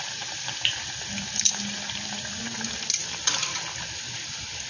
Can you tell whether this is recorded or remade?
recorded